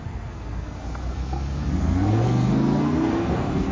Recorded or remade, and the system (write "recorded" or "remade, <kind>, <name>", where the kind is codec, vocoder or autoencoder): remade, codec, SNAC